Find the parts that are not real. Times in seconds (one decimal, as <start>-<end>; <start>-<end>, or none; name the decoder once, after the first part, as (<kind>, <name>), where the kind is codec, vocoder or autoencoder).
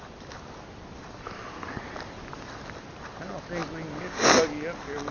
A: none